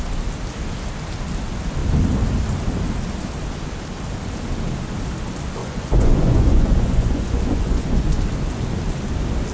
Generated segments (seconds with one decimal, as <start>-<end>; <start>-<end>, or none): 5.6-8.2